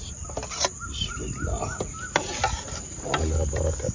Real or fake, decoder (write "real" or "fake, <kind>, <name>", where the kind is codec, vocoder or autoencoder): real